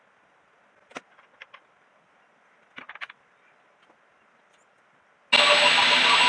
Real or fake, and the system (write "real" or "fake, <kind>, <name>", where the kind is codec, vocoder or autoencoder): real